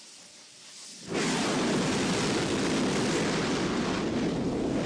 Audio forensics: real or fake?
real